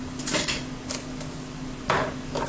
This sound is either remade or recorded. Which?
recorded